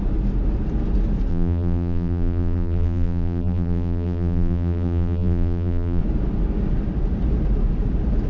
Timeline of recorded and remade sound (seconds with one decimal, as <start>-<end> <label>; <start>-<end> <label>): 0.0-1.3 recorded; 1.3-6.0 remade; 6.0-8.3 recorded